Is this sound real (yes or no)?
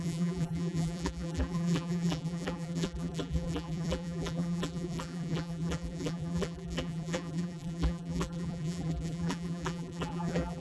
no